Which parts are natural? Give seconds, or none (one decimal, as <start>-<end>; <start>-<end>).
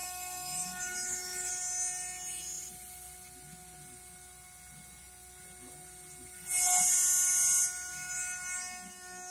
1.5-9.3